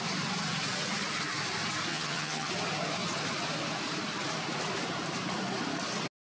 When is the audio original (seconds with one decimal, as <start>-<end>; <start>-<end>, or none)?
0.0-1.9; 2.5-6.3